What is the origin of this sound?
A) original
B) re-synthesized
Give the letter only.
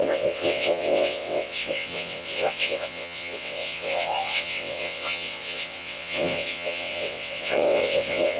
B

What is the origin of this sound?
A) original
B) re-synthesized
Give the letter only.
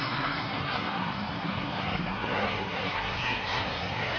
B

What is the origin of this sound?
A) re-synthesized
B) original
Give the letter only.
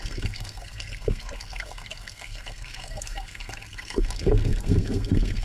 A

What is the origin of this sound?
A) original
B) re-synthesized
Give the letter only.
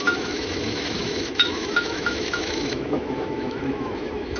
B